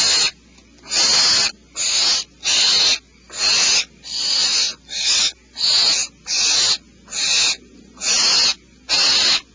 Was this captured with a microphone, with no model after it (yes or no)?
yes